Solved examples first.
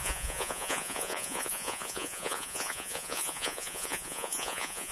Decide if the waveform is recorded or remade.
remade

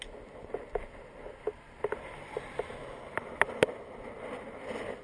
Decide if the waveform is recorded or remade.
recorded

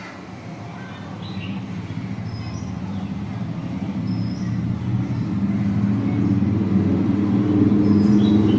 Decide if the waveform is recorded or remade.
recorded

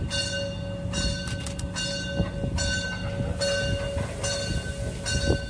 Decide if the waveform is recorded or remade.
recorded